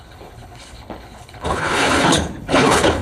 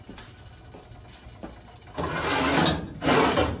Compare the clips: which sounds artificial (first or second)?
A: first